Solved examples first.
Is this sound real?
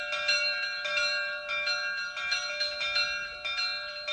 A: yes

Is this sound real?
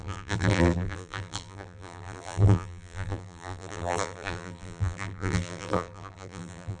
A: no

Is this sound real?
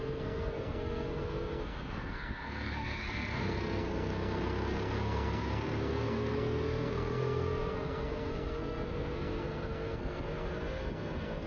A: no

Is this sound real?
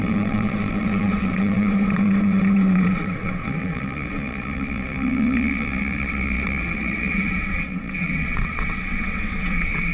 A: no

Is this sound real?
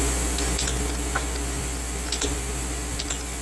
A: yes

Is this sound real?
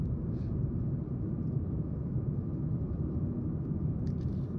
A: yes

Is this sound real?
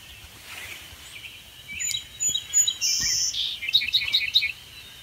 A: yes